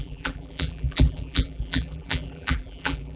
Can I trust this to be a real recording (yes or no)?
no